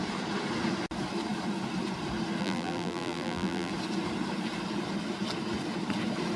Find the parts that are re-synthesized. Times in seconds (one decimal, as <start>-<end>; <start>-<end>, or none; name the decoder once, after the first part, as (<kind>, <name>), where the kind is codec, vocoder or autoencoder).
2.4-3.7 (vocoder, BigVGAN v2)

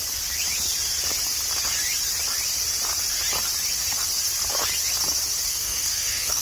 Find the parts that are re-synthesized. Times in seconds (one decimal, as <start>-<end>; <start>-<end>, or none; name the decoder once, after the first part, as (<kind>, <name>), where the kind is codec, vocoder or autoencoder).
5.5-6.4 (codec, SNAC)

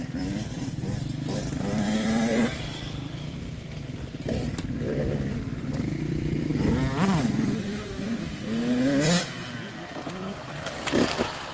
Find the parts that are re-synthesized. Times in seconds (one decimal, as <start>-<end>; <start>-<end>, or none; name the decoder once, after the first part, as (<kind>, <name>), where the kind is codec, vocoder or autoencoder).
0.0-6.5 (vocoder, BigVGAN v2); 7.3-8.6; 10.4-11.5

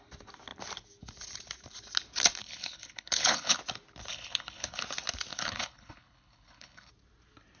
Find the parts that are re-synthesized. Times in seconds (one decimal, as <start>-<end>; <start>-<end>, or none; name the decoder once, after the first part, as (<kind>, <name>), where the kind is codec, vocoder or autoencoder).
2.4-3.6 (codec, HILCodec); 4.1-4.8; 5.3-6.9

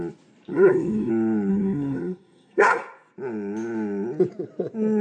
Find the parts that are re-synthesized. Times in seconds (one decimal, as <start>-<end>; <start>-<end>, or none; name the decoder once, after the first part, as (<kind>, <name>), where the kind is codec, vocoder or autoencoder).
0.5-1.1 (codec, SNAC); 1.5-2.8

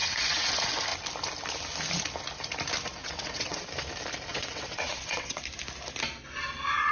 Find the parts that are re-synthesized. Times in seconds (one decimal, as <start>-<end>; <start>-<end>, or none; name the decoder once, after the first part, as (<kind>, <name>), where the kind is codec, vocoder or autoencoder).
0.0-0.5 (vocoder, WaveNeXt); 3.0-3.6; 4.3-5.4

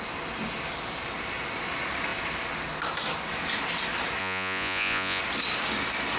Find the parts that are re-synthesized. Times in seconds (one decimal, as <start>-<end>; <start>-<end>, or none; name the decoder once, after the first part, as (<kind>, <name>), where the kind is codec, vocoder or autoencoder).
4.2-5.2 (vocoder, Vocos)